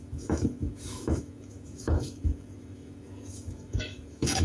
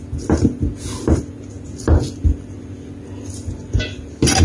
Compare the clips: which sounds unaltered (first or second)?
second